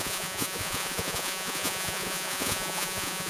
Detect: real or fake fake